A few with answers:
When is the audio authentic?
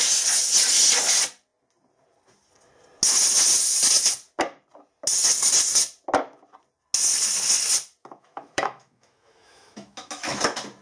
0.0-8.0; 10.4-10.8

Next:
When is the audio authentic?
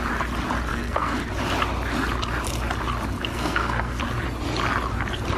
0.0-0.7; 1.2-3.3; 4.0-5.4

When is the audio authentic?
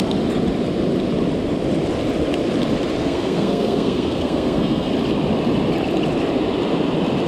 0.0-3.0; 4.9-7.3